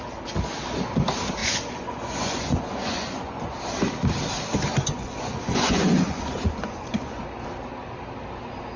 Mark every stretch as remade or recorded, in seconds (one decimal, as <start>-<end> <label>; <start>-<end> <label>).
0.0-1.4 recorded; 1.4-3.6 remade; 3.6-4.7 recorded; 4.7-7.2 remade; 7.2-8.8 recorded